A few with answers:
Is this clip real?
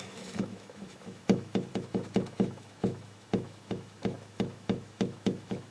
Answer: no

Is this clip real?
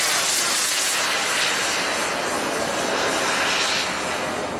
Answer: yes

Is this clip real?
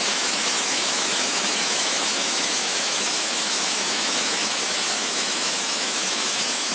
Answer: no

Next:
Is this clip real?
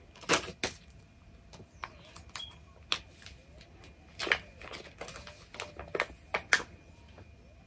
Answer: yes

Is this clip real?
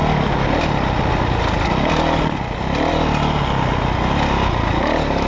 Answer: yes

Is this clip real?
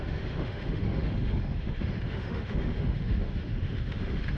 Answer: no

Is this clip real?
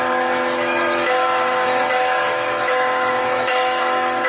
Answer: no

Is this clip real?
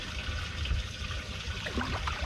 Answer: yes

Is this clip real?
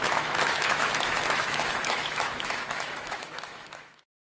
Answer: no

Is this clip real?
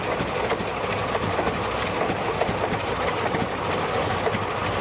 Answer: yes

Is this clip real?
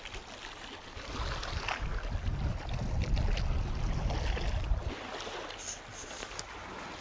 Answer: yes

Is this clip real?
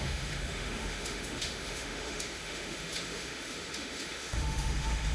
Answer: no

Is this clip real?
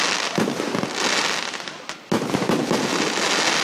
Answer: yes